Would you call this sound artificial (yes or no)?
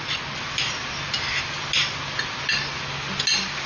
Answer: no